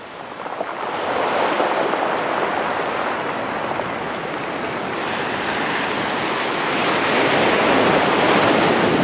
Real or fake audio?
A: real